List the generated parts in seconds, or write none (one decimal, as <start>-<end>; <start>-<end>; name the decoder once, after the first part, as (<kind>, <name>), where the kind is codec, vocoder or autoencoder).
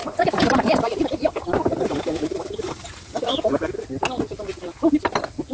0.0-3.3 (vocoder, BigVGAN v2)